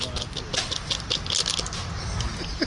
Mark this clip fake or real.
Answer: real